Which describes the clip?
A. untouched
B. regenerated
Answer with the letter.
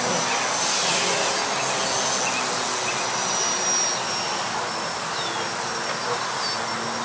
A